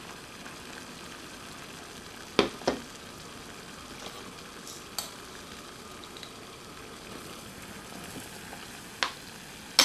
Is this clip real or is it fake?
real